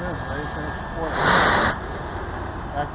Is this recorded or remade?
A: recorded